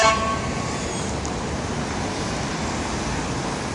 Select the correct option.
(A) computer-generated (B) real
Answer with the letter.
B